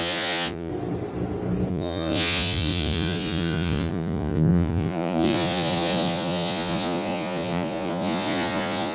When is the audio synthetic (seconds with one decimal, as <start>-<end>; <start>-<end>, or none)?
0.0-0.7; 1.7-8.9